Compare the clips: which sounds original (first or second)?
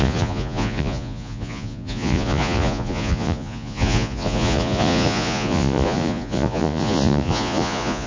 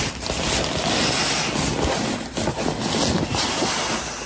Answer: second